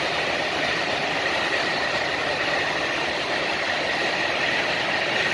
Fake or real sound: fake